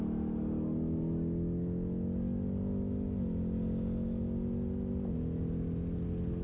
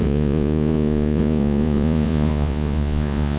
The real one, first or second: first